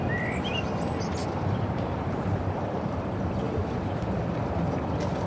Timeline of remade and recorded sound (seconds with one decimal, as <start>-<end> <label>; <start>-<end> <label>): 0.0-1.2 recorded; 1.2-4.2 remade; 4.2-5.3 recorded